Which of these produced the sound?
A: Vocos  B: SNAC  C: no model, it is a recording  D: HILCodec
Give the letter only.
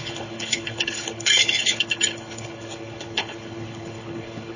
D